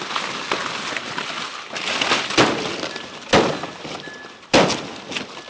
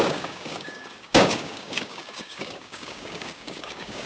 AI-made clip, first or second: second